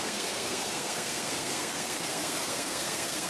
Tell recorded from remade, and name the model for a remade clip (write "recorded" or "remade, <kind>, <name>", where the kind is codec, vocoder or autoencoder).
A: remade, codec, SNAC